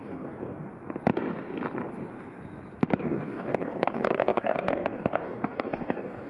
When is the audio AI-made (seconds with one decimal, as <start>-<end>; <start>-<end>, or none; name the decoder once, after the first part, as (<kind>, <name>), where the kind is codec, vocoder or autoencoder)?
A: 0.0-0.7 (codec, DAC); 3.0-6.3